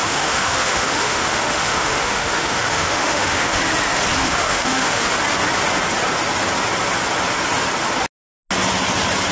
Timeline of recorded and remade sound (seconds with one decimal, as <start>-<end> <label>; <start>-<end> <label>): 0.0-3.6 remade; 3.6-4.2 recorded; 4.2-5.1 remade; 5.1-9.3 recorded